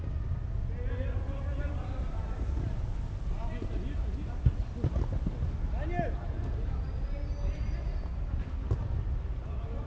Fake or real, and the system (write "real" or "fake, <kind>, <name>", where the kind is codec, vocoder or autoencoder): real